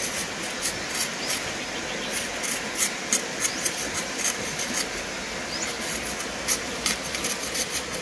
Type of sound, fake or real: real